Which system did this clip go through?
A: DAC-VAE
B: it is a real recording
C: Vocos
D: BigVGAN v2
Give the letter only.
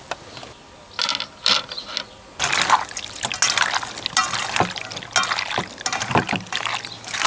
B